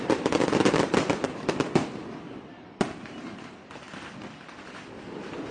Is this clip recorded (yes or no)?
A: yes